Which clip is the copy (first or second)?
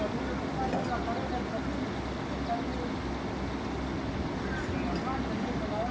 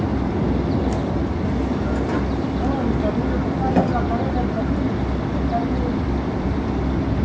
second